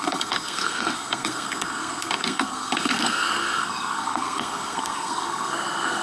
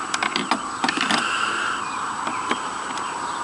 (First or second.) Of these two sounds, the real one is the second